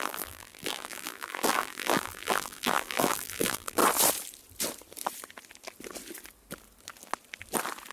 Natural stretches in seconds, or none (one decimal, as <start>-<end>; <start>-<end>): 3.8-7.9